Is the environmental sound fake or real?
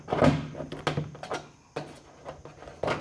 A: real